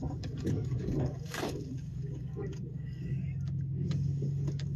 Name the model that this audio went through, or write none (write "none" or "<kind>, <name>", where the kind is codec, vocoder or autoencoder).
codec, DAC